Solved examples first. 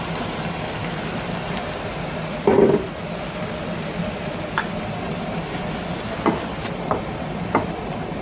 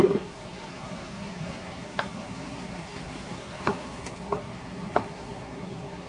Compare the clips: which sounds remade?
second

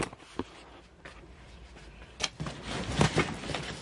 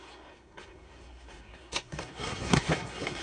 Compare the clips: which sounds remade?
second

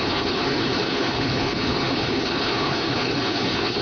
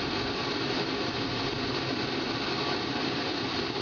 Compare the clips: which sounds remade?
first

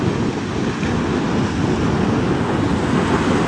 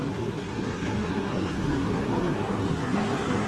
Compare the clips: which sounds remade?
second